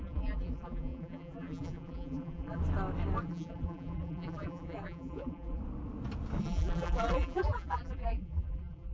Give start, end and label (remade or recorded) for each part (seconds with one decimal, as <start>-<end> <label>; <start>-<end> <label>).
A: 0.0-2.6 remade; 2.6-3.2 recorded; 3.2-5.6 remade; 5.6-6.4 recorded; 6.4-8.9 remade